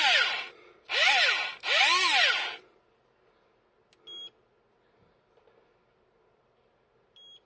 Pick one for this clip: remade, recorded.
recorded